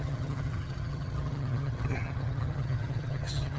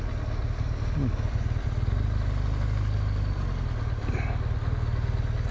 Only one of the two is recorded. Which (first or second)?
second